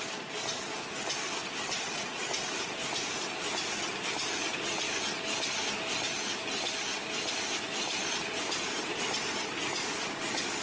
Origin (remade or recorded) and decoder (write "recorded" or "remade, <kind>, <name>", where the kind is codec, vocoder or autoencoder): recorded